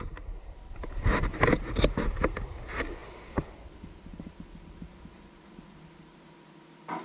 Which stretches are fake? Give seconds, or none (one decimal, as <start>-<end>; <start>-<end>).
none